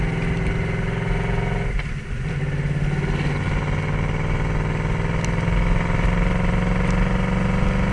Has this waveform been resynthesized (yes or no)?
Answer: no